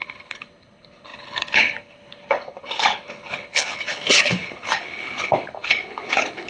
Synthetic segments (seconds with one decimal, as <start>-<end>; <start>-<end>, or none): 0.0-6.5